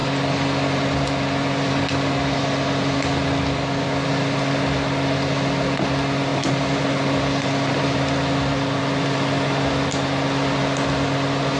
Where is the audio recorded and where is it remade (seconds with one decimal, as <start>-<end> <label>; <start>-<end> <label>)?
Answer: 0.0-11.6 recorded